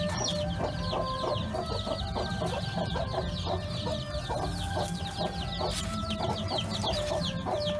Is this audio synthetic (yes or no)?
no